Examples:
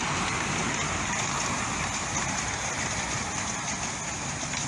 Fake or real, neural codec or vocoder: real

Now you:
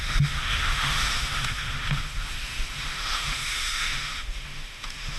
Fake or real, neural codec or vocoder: fake, autoencoder, DAC-VAE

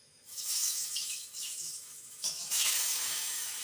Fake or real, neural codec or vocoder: fake, autoencoder, DAC-VAE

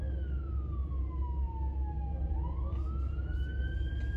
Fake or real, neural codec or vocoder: real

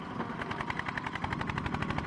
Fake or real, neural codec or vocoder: real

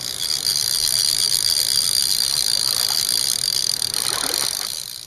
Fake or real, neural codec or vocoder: real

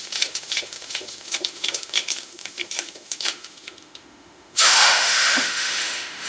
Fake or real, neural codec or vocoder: fake, autoencoder, DAC-VAE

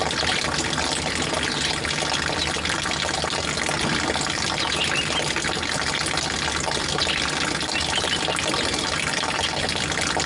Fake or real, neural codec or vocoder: real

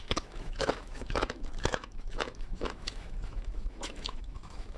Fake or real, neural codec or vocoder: fake, autoencoder, DAC-VAE